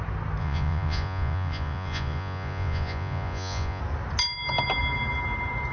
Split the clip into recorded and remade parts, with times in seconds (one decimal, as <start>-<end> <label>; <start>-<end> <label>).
0.0-0.4 recorded; 0.4-3.8 remade; 3.8-5.7 recorded